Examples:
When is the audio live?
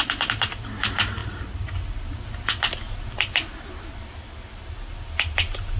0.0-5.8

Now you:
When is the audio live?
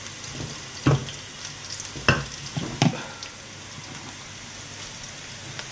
0.0-5.7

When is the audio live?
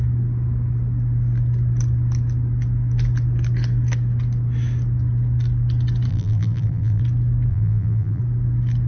0.0-6.1; 7.0-7.5; 8.2-8.9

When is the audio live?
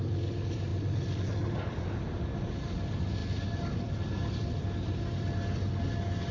0.0-0.7; 1.8-6.3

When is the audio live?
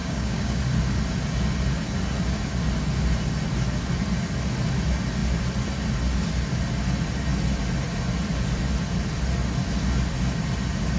0.6-11.0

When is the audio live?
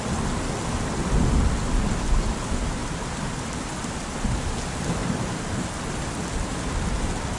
0.0-2.8; 4.4-7.4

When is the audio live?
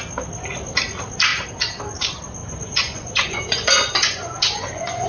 0.0-2.4